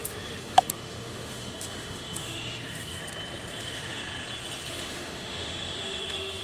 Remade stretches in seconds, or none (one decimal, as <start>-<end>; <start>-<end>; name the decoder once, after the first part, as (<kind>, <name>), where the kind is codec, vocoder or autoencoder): 0.0-3.0 (autoencoder, DAC-VAE); 3.6-4.0; 4.7-6.4